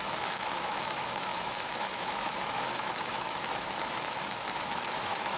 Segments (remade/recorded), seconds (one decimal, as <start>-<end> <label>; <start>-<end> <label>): 0.0-5.4 remade